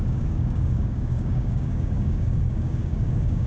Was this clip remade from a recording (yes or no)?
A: yes